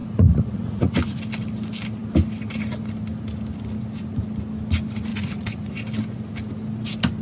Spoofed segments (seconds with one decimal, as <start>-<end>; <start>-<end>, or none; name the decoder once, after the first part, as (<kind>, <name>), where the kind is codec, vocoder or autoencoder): 0.0-1.2 (vocoder, Vocos); 5.1-5.7